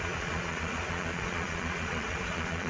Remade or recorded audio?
remade